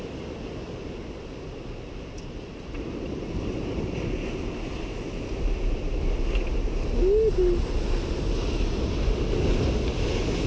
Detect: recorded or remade recorded